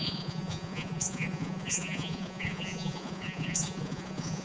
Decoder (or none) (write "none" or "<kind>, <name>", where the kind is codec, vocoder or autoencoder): vocoder, Vocos